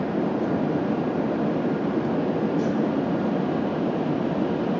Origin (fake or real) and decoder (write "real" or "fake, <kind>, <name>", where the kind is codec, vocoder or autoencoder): real